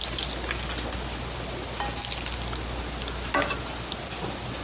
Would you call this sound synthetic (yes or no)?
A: no